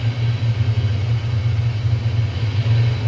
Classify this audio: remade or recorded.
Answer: recorded